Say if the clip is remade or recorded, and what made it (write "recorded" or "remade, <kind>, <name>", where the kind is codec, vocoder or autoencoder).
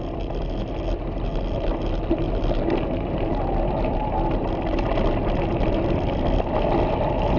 recorded